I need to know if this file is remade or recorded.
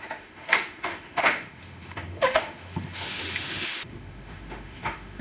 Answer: remade